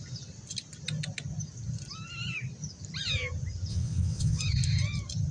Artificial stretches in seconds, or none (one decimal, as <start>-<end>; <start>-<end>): 3.7-4.4